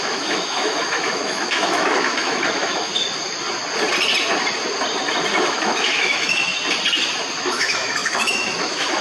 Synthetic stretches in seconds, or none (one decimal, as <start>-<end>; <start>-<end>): 0.0-2.9; 5.4-6.5; 7.4-9.0